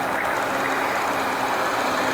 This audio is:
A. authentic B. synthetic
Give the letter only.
A